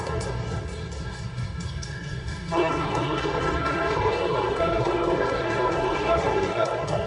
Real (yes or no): no